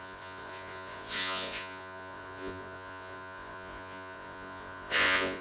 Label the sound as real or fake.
fake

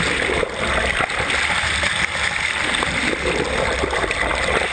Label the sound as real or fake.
real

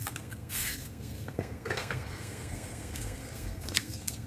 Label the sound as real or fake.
fake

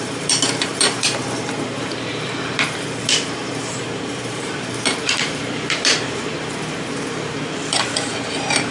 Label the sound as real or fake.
fake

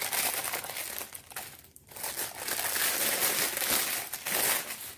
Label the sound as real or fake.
real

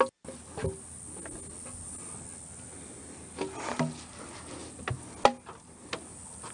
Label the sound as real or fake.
real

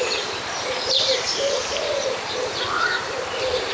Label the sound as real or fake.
fake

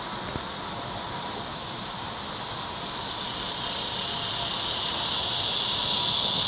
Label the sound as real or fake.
real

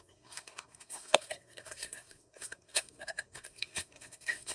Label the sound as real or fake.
fake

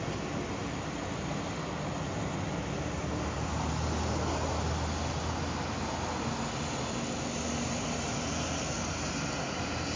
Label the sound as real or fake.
real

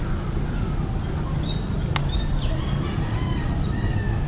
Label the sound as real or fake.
real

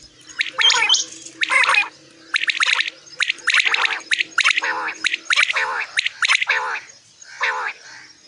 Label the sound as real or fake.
real